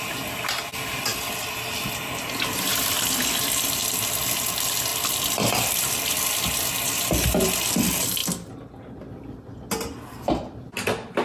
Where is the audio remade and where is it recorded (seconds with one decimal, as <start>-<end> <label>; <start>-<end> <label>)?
0.0-11.2 recorded